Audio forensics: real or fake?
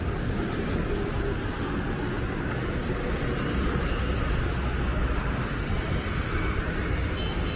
real